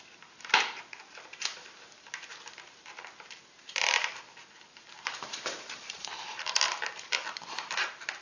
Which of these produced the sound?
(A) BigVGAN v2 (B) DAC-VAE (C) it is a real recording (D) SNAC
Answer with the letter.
A